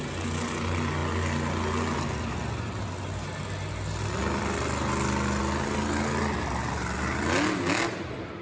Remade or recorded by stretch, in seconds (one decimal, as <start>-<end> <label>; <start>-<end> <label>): 0.0-8.4 recorded

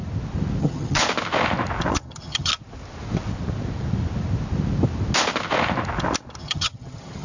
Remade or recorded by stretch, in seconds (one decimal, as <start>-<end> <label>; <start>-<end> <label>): 0.0-0.6 recorded; 0.6-1.0 remade; 1.0-1.9 recorded; 1.9-2.5 remade; 2.5-6.4 recorded; 6.4-7.2 remade

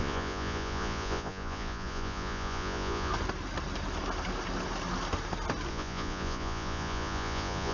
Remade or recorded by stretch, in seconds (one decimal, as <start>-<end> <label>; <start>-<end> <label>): 0.0-3.1 remade; 3.1-5.7 recorded; 5.7-7.7 remade

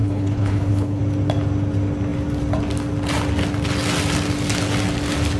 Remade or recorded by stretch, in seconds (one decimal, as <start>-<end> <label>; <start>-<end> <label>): 0.0-1.0 remade; 1.0-5.4 recorded

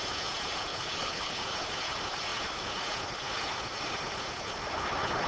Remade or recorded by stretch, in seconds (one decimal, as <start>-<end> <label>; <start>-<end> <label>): 0.0-0.7 recorded; 0.7-1.4 remade; 1.4-5.3 recorded